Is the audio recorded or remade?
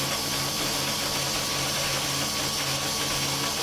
recorded